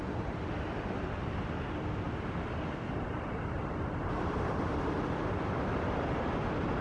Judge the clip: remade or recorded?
recorded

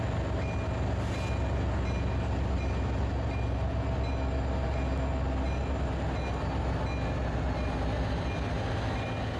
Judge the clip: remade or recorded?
recorded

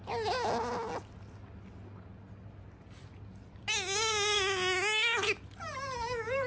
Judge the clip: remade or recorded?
recorded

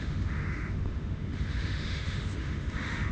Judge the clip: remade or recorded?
remade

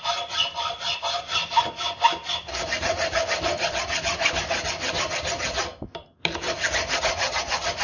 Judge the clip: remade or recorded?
recorded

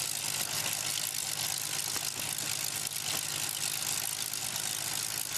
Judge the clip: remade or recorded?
recorded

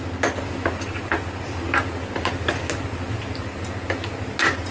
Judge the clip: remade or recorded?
recorded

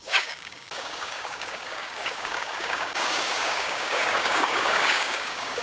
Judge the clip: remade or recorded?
remade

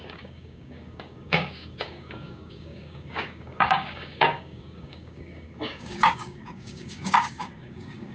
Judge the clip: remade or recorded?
remade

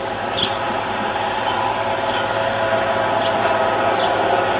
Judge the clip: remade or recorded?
recorded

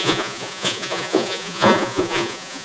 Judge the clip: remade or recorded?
remade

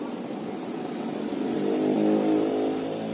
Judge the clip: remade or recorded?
remade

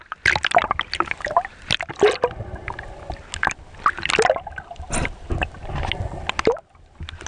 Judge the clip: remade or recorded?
recorded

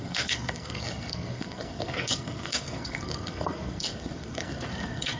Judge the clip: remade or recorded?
remade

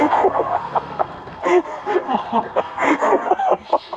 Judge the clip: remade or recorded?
remade